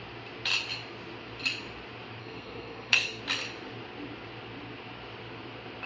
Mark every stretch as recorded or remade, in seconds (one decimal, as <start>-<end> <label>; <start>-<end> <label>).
0.0-2.2 recorded; 2.2-3.2 remade; 3.2-5.9 recorded

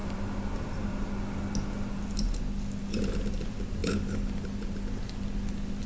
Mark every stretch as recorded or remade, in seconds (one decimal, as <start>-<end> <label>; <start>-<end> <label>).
0.0-5.9 recorded

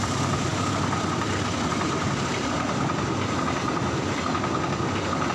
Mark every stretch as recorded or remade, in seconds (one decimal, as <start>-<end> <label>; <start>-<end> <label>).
0.0-1.7 remade; 1.7-5.3 recorded

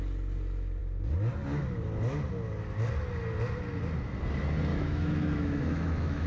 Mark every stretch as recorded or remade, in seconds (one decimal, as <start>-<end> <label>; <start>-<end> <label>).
0.0-4.7 recorded; 4.7-6.3 remade

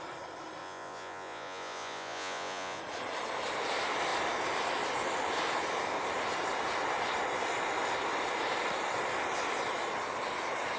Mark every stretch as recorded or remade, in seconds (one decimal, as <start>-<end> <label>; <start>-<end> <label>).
0.0-0.6 recorded; 0.6-2.8 remade; 2.8-10.8 recorded

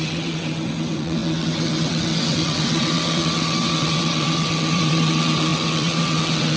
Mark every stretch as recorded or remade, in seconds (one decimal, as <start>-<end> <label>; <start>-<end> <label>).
0.0-6.6 remade